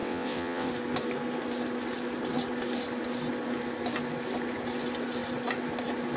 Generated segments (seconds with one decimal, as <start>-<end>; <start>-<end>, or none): 0.0-0.7